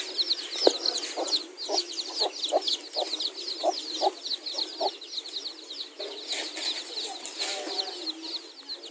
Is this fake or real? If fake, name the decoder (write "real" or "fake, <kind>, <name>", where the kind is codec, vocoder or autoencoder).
real